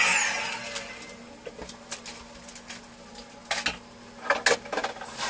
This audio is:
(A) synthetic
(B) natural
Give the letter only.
B